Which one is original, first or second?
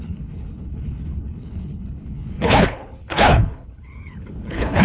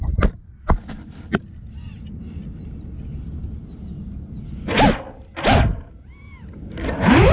second